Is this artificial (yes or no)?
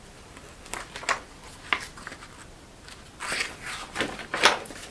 no